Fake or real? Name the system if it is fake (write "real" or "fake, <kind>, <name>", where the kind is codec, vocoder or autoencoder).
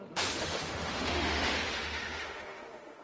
fake, autoencoder, DAC-VAE